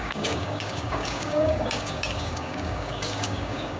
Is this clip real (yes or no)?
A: no